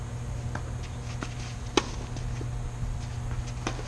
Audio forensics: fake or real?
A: real